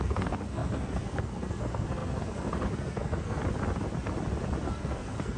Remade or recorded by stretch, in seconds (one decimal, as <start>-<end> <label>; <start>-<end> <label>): 0.0-3.4 remade; 3.4-4.7 recorded; 4.7-5.4 remade